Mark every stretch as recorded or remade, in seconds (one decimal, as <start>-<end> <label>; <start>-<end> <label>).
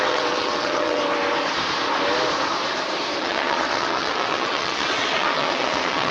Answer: 0.0-1.0 remade; 1.0-3.2 recorded; 3.2-6.1 remade